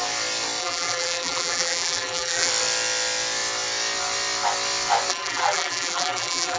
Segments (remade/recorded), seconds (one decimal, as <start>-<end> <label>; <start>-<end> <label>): 0.0-0.6 recorded; 0.6-2.5 remade; 2.5-5.1 recorded; 5.1-6.6 remade